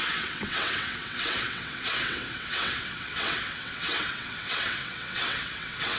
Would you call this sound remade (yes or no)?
yes